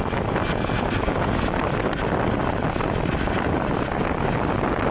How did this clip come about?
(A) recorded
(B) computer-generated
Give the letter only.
A